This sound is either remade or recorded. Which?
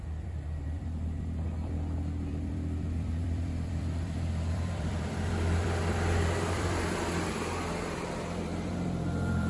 remade